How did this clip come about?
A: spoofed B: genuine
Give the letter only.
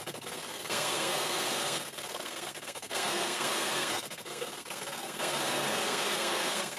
A